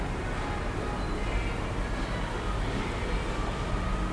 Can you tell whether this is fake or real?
real